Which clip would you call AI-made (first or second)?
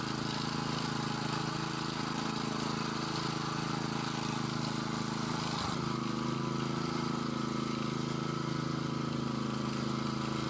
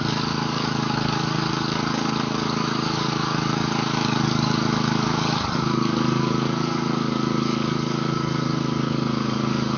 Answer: second